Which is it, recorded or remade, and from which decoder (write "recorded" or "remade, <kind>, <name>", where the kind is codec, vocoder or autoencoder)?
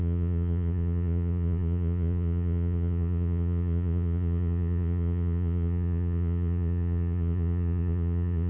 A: remade, vocoder, Vocos